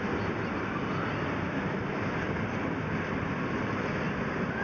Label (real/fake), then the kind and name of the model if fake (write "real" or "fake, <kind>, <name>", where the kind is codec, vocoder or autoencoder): real